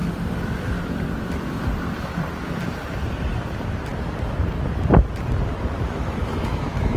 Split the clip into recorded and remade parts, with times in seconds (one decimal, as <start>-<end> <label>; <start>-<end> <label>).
0.0-6.2 recorded; 6.2-7.0 remade